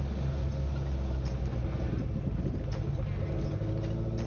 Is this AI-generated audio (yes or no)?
no